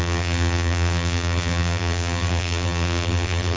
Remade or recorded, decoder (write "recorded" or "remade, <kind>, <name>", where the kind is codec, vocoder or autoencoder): remade, vocoder, BigVGAN v2